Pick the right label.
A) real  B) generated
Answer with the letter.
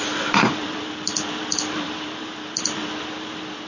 B